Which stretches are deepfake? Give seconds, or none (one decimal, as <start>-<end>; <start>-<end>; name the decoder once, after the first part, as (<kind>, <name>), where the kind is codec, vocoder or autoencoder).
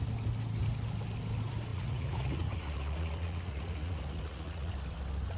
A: 1.7-4.7 (vocoder, Vocos)